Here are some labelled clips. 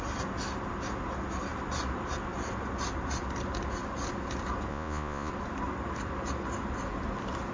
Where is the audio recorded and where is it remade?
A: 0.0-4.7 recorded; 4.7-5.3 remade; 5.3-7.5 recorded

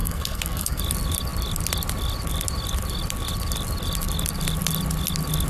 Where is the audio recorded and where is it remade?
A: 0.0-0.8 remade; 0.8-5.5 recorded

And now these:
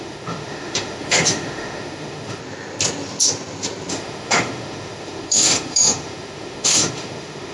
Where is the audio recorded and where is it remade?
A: 0.0-2.4 remade; 2.4-3.9 recorded; 3.9-7.5 remade

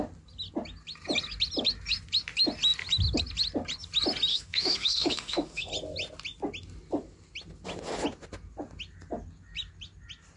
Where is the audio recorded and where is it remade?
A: 0.0-4.3 recorded; 4.3-5.7 remade; 5.7-10.4 recorded

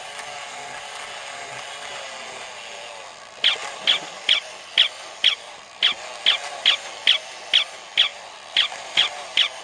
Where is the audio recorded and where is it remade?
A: 0.0-3.6 recorded; 3.6-5.6 remade; 5.6-8.1 recorded; 8.1-9.6 remade

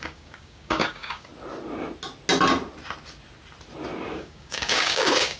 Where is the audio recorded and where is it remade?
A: 0.0-1.3 remade; 1.3-4.1 recorded; 4.1-5.4 remade